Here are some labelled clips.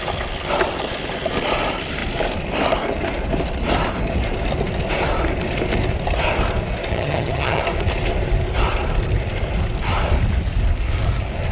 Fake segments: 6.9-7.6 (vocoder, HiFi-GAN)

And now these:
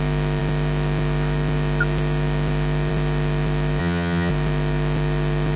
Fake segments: 3.8-4.3 (vocoder, HiFi-GAN)

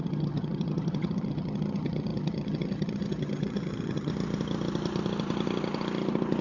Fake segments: 0.0-4.1 (vocoder, HiFi-GAN)